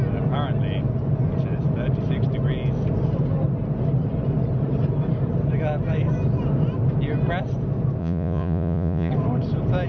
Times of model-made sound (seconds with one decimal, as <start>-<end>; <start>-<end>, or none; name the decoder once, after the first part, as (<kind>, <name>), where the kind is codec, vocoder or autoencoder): 8.0-9.1 (vocoder, Vocos)